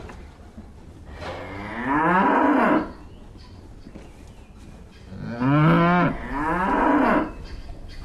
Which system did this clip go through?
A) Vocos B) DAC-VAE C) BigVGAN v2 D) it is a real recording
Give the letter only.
D